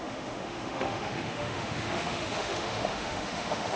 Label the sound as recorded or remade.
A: remade